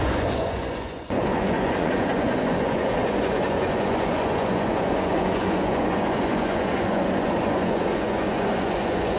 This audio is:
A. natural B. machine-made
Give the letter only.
B